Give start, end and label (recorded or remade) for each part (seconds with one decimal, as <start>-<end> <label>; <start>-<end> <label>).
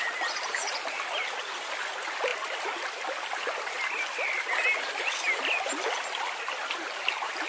0.0-7.5 recorded